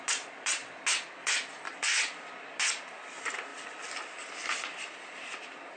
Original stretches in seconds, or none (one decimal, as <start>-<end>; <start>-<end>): 0.0-3.5

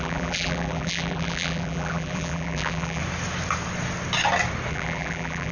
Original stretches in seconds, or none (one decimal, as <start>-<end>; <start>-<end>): 3.0-4.7

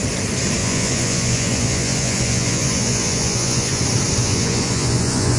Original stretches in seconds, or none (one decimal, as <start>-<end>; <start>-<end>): 0.0-0.6; 3.8-4.2

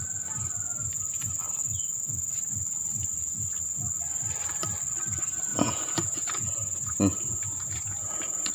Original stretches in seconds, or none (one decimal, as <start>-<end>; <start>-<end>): 0.0-5.5